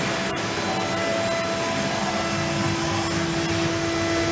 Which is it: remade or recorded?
recorded